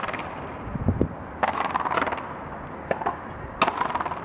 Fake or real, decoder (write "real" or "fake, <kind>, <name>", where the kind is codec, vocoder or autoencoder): real